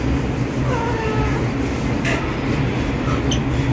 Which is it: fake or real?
real